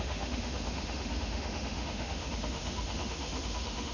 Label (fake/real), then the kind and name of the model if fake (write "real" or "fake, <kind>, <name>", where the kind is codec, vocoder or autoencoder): fake, autoencoder, DAC-VAE